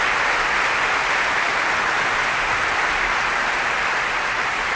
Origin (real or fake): fake